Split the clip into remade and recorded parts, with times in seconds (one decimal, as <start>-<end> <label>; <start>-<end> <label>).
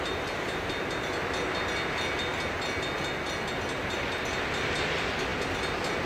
0.0-6.1 recorded